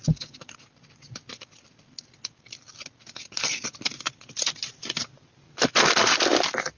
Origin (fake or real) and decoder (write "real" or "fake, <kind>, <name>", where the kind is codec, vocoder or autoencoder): real